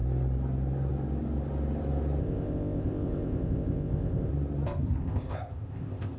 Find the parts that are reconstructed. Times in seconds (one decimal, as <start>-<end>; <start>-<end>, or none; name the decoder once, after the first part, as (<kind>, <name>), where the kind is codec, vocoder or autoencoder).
2.2-4.3 (codec, ZipCodec); 5.0-6.2